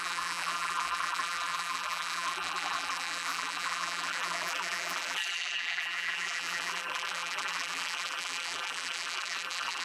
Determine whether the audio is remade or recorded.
remade